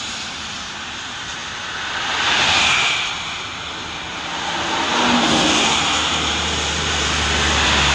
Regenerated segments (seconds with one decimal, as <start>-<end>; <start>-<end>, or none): 0.0-1.4; 6.1-7.9